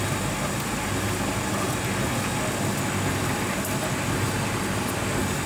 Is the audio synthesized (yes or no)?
no